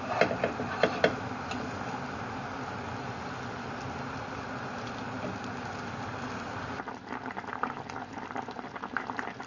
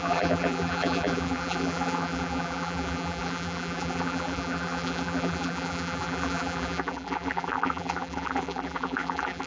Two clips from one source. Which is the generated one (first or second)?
second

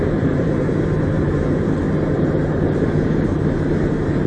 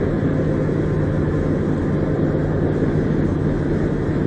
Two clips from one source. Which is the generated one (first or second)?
first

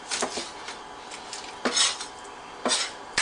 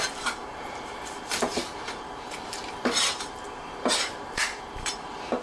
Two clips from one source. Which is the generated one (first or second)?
second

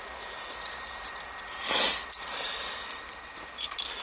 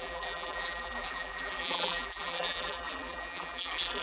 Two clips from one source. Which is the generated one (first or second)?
second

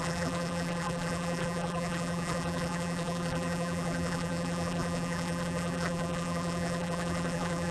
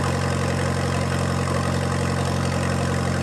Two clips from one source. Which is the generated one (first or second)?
first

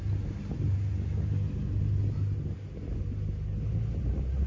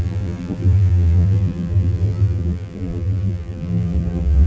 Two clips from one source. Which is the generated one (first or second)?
second